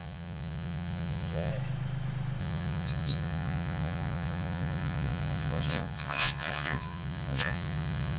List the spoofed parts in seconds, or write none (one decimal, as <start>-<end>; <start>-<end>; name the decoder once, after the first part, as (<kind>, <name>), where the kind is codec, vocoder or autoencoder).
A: 0.0-1.5 (vocoder, Vocos); 2.4-8.2